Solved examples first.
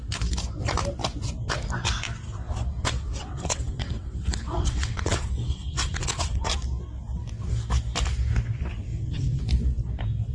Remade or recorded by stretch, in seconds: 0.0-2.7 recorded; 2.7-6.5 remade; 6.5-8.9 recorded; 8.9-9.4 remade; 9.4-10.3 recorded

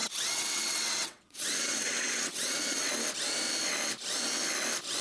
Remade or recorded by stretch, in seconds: 0.0-2.9 remade; 2.9-5.0 recorded

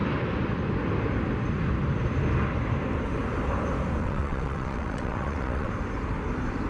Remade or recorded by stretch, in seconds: 0.0-4.0 recorded; 4.0-5.7 remade; 5.7-6.7 recorded

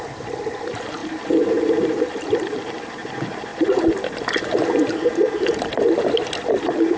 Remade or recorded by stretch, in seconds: 0.0-7.0 recorded

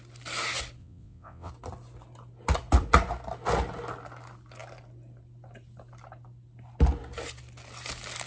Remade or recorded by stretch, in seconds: 0.0-0.8 recorded; 0.8-1.5 remade; 1.5-8.3 recorded